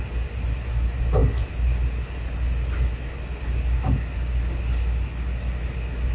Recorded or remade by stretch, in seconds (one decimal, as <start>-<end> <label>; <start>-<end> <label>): 0.0-6.1 recorded